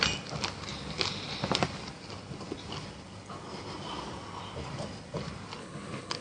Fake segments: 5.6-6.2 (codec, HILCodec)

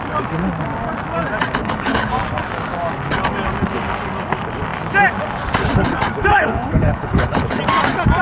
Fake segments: 1.6-2.1 (codec, HILCodec); 6.3-7.6

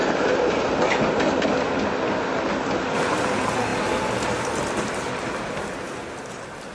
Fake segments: none